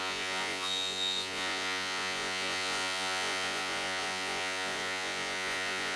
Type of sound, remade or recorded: remade